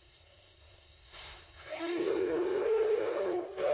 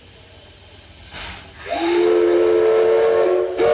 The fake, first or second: first